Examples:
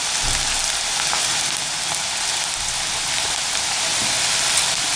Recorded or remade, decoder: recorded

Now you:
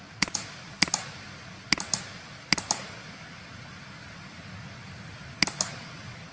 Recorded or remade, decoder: recorded